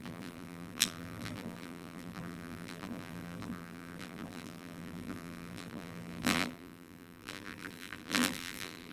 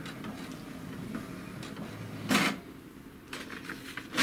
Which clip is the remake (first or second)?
first